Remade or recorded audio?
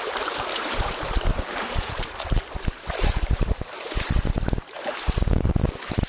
remade